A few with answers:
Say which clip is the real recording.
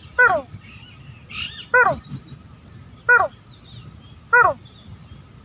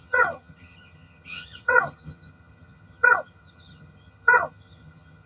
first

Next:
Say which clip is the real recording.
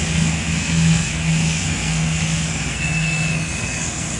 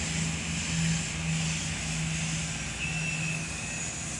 second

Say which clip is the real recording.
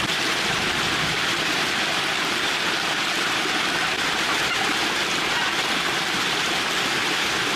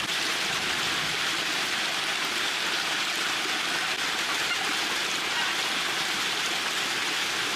second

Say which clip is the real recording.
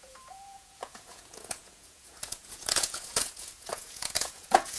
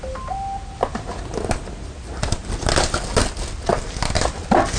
second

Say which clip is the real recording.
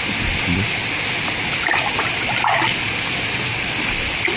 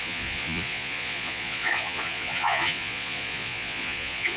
first